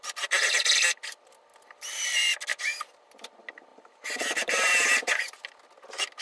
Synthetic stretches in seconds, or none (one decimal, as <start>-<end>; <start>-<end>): 2.5-3.1; 3.7-5.5